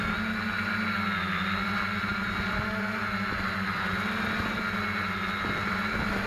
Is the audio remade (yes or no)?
no